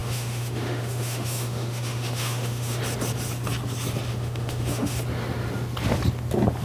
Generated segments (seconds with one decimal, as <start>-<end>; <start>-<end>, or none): 0.0-2.8; 4.1-5.0